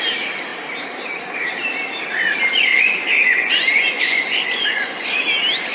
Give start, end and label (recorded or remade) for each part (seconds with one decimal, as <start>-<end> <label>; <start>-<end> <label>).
0.0-2.7 recorded; 2.7-5.2 remade; 5.2-5.7 recorded